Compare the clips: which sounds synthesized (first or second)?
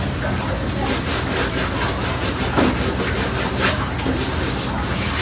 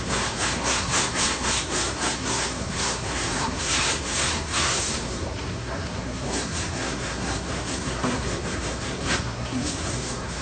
second